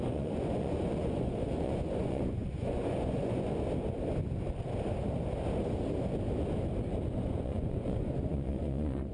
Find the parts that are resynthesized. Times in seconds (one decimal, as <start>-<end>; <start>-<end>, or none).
0.0-3.5; 7.1-9.1

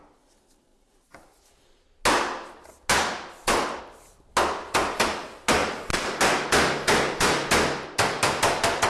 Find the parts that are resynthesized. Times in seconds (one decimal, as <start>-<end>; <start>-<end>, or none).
none